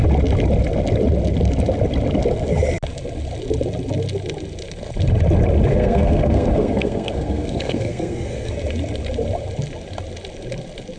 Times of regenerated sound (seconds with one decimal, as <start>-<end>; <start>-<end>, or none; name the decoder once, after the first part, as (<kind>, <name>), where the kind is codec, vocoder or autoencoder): 5.7-8.5 (codec, SNAC)